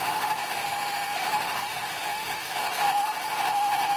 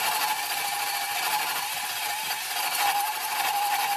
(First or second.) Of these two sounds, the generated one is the first